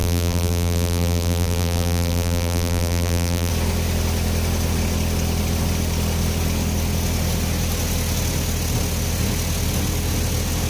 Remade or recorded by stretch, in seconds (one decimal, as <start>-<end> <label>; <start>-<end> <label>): 0.0-3.5 remade; 3.5-10.7 recorded